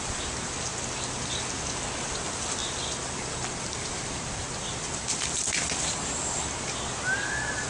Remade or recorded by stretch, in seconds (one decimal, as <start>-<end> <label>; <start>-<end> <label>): 0.0-7.7 recorded

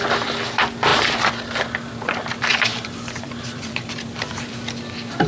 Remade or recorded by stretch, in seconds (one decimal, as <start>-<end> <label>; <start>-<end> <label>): 0.0-2.7 recorded; 2.7-4.5 remade; 4.5-5.3 recorded

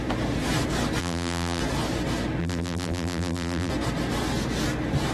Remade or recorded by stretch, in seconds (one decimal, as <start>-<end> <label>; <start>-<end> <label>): 0.0-1.0 recorded; 1.0-1.6 remade; 1.6-2.4 recorded; 2.4-3.7 remade; 3.7-5.1 recorded

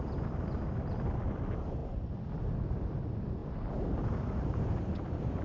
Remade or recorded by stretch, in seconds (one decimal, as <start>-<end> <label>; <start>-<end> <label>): 0.0-5.4 recorded

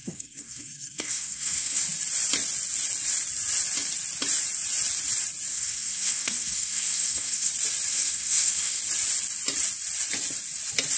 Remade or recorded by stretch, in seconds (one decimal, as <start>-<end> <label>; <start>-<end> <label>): 0.0-1.8 remade; 1.8-5.5 recorded; 5.5-7.5 remade; 7.5-7.9 recorded; 7.9-8.8 remade; 8.8-11.0 recorded

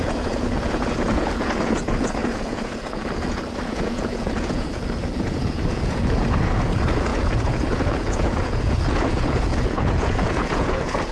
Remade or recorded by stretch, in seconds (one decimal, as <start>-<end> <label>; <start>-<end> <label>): 0.0-11.1 remade

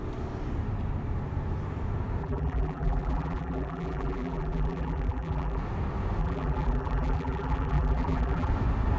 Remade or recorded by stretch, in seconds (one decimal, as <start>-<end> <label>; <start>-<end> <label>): 0.0-2.2 recorded; 2.2-5.6 remade; 5.6-6.2 recorded; 6.2-8.5 remade; 8.5-9.0 recorded